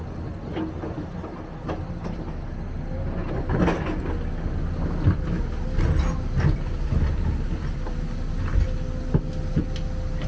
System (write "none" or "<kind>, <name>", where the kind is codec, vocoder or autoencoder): none